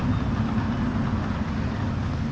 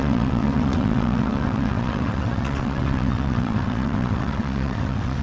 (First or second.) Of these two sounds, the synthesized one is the second